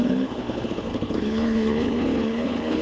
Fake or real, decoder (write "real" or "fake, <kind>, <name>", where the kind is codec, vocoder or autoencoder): fake, codec, HILCodec